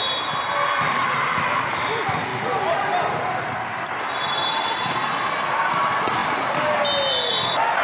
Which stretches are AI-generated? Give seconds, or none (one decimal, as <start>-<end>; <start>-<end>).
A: none